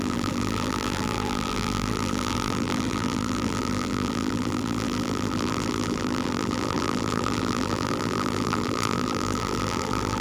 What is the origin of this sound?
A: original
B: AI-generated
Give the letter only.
B